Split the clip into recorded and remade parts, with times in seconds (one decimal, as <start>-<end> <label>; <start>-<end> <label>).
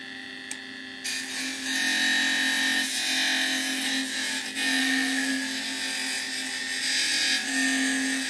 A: 0.0-4.8 recorded; 4.8-5.3 remade; 5.3-8.3 recorded